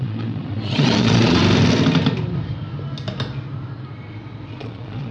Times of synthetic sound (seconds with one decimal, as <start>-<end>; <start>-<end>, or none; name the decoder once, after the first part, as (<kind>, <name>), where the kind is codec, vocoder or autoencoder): 0.0-1.4 (vocoder, Vocos); 4.5-5.1